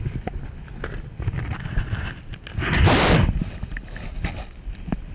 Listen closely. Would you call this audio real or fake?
real